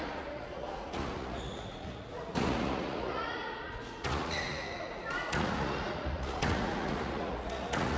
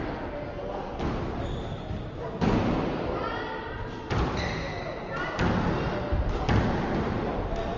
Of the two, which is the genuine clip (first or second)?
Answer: second